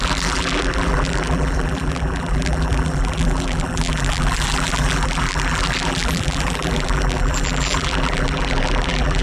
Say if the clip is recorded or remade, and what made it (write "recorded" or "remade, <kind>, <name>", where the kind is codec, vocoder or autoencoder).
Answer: remade, vocoder, BigVGAN v2